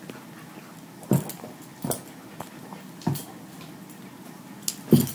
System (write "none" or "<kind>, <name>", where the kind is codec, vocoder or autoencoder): none